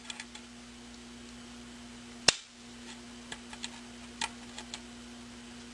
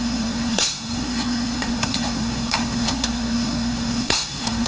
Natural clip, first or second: first